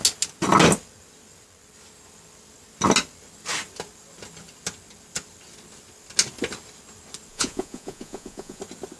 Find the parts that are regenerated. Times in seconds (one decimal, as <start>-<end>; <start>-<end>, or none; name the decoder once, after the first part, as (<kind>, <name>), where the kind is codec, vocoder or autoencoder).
7.3-8.6 (vocoder, Vocos)